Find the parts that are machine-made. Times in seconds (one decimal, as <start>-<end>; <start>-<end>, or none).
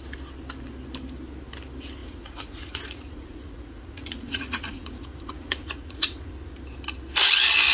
2.0-6.3